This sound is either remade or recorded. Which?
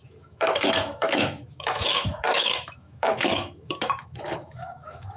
remade